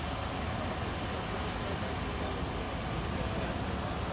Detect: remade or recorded recorded